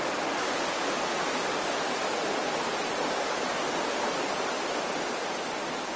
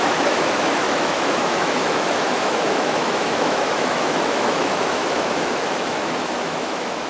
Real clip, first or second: first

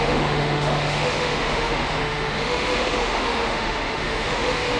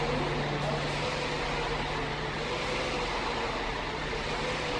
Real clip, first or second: second